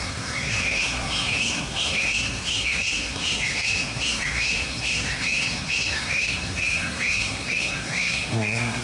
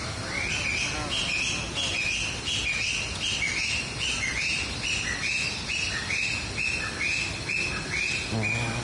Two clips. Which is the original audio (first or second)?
second